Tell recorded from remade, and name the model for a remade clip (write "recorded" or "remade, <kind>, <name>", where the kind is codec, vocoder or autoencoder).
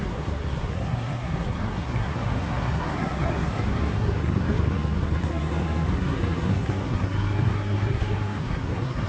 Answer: remade, codec, SNAC